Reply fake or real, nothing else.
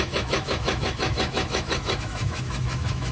fake